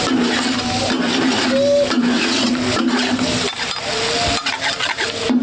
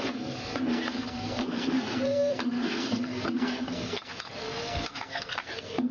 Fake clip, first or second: second